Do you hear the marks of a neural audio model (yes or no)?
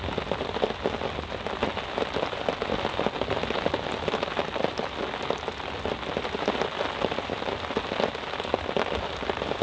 no